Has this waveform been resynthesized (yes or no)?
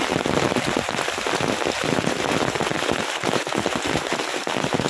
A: no